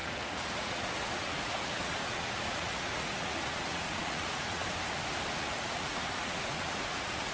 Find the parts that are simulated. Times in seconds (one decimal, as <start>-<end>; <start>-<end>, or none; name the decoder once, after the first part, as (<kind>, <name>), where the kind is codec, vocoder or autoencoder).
0.0-4.6 (vocoder, Vocos); 5.3-7.3